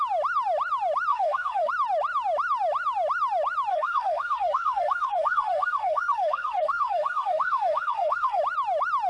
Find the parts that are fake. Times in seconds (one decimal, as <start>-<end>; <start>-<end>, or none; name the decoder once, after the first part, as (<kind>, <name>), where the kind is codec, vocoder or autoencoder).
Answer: 1.1-1.7 (codec, SNAC); 3.7-8.4